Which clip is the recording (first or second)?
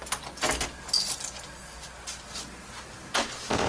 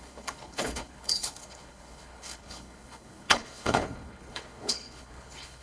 first